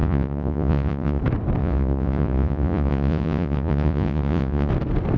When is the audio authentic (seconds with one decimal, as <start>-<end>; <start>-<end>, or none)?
1.2-1.6; 4.7-5.2